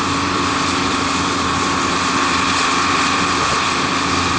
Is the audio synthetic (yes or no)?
yes